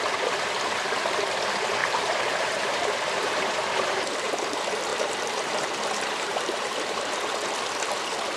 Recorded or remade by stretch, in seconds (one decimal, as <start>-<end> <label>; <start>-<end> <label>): 0.0-1.8 recorded; 1.8-4.3 remade; 4.3-4.9 recorded; 4.9-7.1 remade; 7.1-8.4 recorded